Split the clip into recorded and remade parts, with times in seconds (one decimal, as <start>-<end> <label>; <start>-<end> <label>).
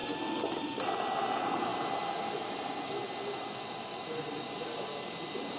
0.0-5.6 recorded